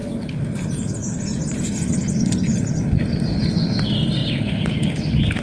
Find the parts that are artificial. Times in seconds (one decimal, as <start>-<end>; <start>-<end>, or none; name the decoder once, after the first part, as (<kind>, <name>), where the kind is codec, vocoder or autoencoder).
none